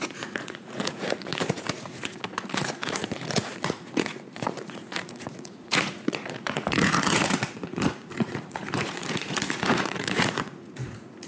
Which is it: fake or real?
fake